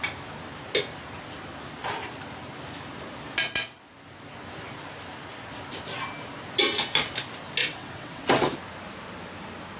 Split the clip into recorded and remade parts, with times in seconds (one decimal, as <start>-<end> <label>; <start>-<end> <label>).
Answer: 0.0-7.6 recorded; 7.6-8.5 remade; 8.5-9.8 recorded